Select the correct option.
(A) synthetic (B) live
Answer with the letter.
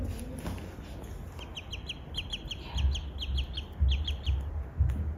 B